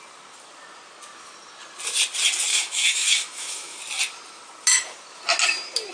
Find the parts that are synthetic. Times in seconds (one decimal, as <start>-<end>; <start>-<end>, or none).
2.5-3.8